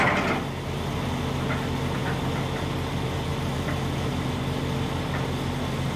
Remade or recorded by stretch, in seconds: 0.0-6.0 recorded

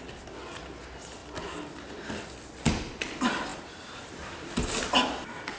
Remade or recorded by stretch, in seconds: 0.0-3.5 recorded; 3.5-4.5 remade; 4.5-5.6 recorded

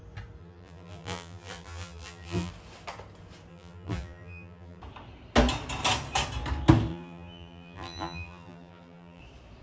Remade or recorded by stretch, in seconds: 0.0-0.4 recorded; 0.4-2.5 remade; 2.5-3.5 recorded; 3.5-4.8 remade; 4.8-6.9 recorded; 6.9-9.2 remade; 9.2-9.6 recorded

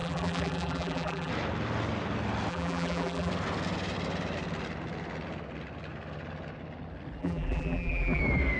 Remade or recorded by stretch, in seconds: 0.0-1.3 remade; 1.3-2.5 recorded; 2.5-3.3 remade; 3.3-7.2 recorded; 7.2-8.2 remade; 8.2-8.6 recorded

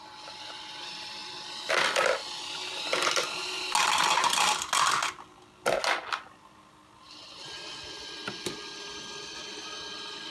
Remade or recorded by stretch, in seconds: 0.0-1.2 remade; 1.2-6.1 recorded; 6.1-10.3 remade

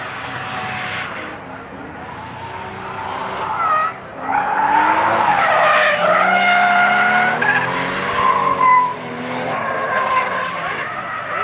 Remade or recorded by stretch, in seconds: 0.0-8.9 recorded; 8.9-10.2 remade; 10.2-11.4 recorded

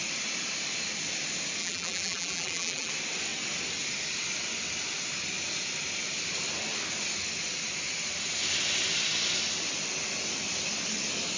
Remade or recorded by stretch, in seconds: 0.0-1.6 recorded; 1.6-2.9 remade; 2.9-11.4 recorded